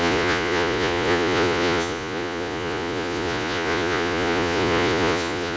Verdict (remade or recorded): remade